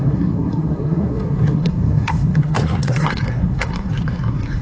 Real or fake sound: fake